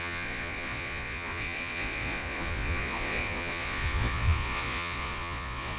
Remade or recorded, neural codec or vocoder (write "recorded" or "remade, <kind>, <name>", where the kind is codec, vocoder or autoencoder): remade, vocoder, Vocos